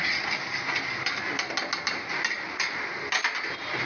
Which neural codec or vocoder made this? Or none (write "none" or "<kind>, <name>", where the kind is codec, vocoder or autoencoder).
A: none